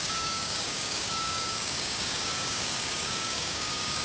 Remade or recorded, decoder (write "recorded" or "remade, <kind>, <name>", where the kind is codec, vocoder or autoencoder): remade, codec, DAC